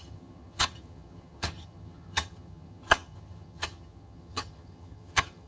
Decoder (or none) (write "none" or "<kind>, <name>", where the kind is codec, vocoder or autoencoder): vocoder, HiFi-GAN